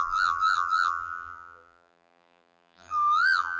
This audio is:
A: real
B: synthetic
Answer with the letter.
B